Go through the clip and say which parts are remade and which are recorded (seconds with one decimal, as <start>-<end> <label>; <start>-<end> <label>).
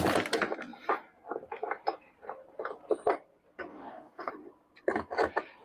0.0-3.7 recorded; 3.7-4.3 remade; 4.3-5.6 recorded